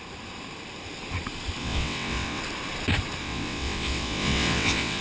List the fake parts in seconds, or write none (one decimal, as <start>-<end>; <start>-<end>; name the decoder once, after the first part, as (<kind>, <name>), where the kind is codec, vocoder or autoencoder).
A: 1.6-2.4 (vocoder, WaveNeXt); 3.2-5.0